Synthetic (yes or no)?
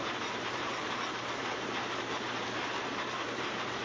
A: yes